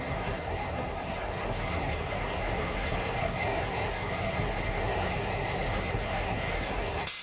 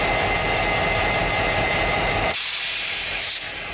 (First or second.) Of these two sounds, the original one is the second